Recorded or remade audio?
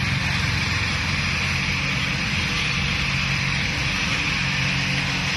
recorded